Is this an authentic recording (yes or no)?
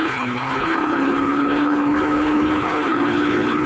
no